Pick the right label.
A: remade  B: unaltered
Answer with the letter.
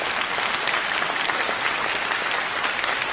B